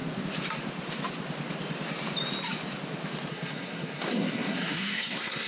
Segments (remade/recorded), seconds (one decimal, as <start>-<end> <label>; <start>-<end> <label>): 0.0-3.3 recorded; 3.3-5.5 remade